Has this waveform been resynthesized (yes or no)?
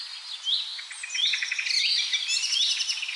no